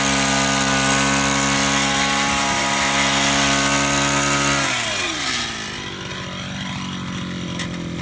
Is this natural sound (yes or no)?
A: yes